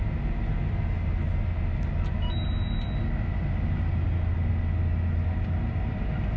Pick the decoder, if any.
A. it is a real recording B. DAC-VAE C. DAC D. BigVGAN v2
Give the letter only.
A